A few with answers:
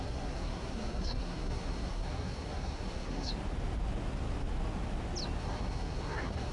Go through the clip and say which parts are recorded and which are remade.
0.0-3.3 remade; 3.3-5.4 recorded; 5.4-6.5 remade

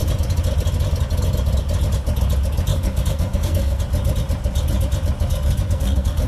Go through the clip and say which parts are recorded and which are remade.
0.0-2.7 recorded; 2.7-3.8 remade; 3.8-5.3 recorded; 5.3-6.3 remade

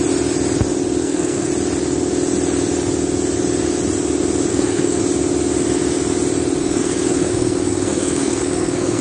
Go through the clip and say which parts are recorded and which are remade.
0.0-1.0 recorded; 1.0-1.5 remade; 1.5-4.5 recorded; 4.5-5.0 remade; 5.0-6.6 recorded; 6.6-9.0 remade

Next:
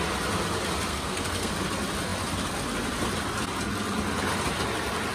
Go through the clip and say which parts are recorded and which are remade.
0.0-0.9 recorded; 0.9-1.5 remade; 1.5-5.1 recorded

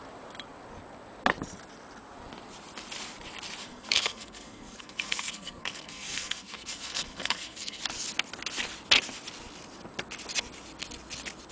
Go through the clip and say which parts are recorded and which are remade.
0.0-3.6 recorded; 3.6-7.8 remade; 7.8-11.5 recorded

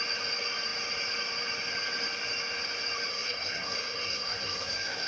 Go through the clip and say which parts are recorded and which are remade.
0.0-3.1 recorded; 3.1-5.1 remade

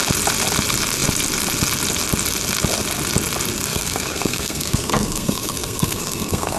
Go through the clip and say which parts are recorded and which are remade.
0.0-3.7 recorded; 3.7-6.6 remade

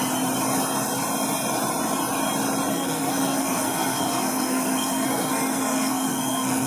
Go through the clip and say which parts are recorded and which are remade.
0.0-2.7 recorded; 2.7-6.7 remade